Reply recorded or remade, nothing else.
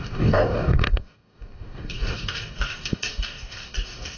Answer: remade